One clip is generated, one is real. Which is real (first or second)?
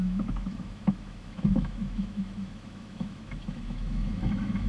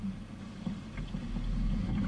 second